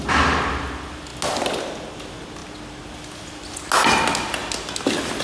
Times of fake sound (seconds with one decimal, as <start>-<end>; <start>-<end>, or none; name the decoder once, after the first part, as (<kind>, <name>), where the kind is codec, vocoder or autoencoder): none